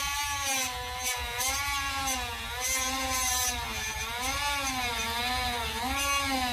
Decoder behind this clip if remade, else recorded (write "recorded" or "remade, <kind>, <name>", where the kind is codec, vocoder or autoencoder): recorded